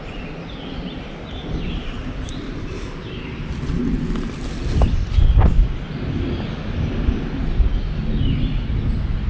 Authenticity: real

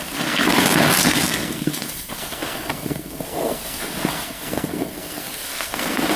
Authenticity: fake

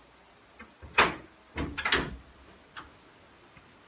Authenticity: real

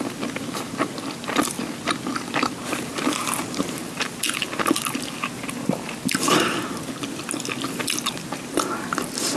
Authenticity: real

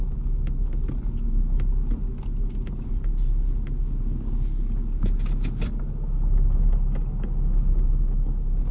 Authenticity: real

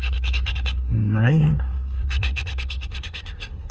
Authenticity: fake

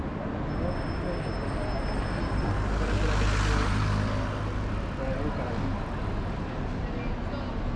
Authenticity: real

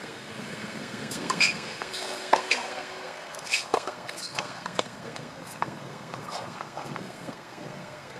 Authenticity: fake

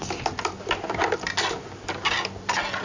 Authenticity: real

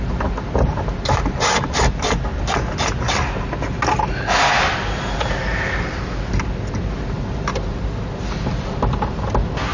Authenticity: real